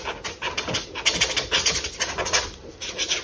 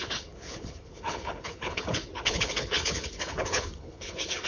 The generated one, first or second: second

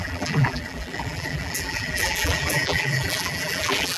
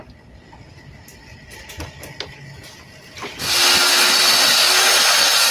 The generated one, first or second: first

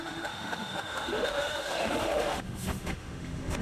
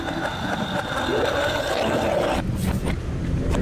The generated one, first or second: first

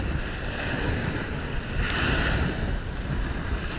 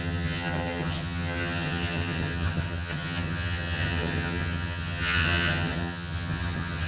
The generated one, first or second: second